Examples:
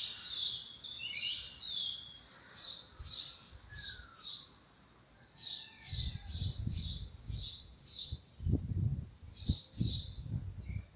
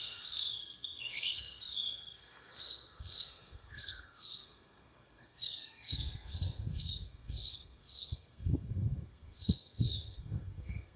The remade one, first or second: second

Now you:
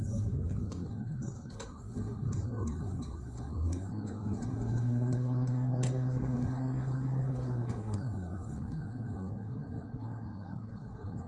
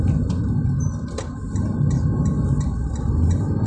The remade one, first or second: first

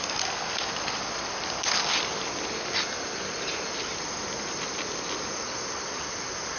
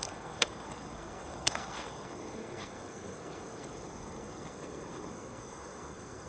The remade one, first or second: second